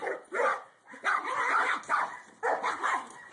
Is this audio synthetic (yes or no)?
no